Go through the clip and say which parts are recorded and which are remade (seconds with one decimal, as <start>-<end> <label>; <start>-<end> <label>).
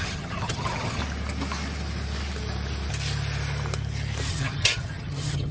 0.0-1.0 remade; 1.0-4.3 recorded; 4.3-5.5 remade